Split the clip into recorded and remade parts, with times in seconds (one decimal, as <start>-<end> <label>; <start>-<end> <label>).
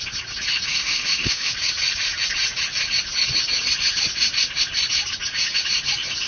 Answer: 0.0-0.7 recorded; 0.7-1.5 remade; 1.5-6.3 recorded